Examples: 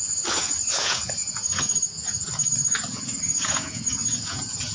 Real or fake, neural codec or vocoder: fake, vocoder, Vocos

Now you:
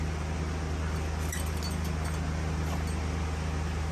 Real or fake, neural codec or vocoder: real